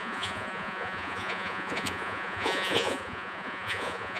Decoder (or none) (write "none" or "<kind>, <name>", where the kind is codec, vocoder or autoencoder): vocoder, Vocos